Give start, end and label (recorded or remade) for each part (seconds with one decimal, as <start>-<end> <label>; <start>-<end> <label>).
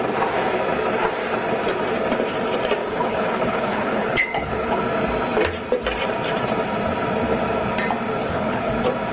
0.0-2.8 recorded; 2.8-4.8 remade; 4.8-8.2 recorded; 8.2-8.7 remade; 8.7-9.1 recorded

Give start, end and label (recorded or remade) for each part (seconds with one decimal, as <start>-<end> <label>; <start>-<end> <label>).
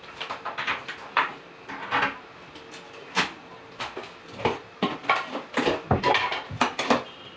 0.0-7.4 recorded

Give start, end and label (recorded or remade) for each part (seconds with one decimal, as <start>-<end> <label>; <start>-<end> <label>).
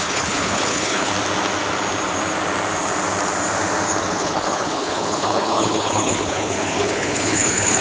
0.0-1.1 remade; 1.1-4.0 recorded; 4.0-7.8 remade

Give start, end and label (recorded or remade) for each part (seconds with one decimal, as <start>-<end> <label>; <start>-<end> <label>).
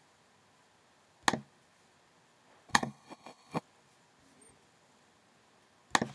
0.0-2.7 recorded; 2.7-3.6 remade; 3.6-6.1 recorded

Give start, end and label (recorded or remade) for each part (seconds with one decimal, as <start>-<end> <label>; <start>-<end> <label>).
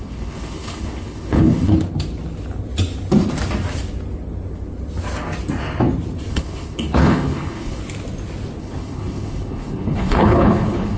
0.0-1.7 remade; 1.7-6.3 recorded; 6.3-7.8 remade; 7.8-8.6 recorded; 8.6-11.0 remade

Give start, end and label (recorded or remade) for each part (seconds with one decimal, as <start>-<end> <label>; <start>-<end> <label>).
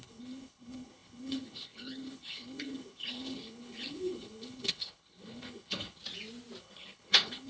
0.0-6.0 remade; 6.0-6.6 recorded; 6.6-7.5 remade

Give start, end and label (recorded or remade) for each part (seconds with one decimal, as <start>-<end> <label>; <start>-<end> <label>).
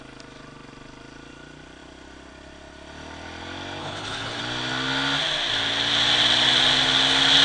0.0-3.8 recorded; 3.8-4.4 remade; 4.4-7.4 recorded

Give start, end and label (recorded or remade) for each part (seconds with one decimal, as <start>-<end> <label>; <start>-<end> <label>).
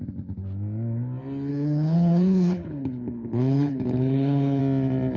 0.0-1.5 recorded; 1.5-4.6 remade; 4.6-5.2 recorded